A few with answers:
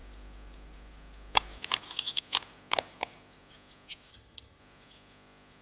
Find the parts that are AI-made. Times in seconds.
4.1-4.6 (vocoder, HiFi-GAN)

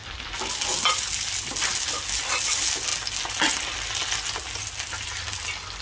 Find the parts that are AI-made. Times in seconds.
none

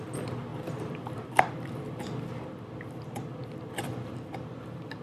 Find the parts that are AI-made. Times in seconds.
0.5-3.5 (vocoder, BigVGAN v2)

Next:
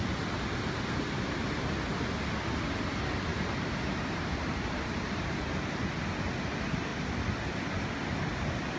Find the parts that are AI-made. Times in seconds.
3.3-5.5 (vocoder, BigVGAN v2)

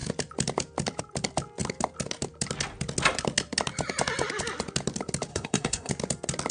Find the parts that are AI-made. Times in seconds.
5.3-5.9 (codec, SNAC)